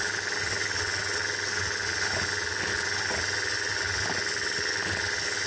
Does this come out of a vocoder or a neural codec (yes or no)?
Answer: no